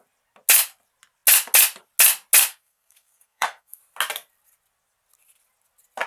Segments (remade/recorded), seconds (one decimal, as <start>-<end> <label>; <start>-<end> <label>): 0.0-2.5 recorded; 2.5-3.8 remade; 3.8-6.1 recorded

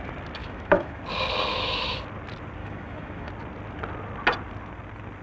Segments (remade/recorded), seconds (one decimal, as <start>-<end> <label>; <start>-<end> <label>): 0.0-0.4 recorded; 0.4-1.0 remade; 1.0-1.5 recorded; 1.5-2.0 remade; 2.0-2.6 recorded; 2.6-3.3 remade; 3.3-5.2 recorded

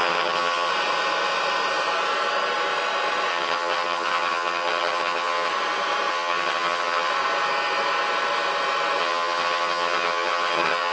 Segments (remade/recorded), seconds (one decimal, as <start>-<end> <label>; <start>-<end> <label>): 0.0-0.7 remade; 0.7-3.3 recorded; 3.3-5.5 remade; 5.5-6.1 recorded; 6.1-7.1 remade; 7.1-9.0 recorded; 9.0-10.9 remade

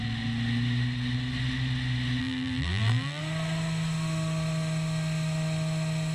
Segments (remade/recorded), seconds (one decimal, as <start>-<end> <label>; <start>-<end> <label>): 0.0-2.2 recorded; 2.2-3.2 remade; 3.2-6.1 recorded

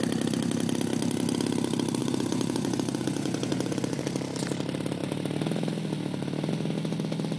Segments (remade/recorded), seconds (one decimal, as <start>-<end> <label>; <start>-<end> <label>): 0.0-2.0 recorded; 2.0-4.0 remade; 4.0-7.4 recorded